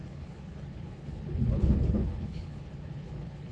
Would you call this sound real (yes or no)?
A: no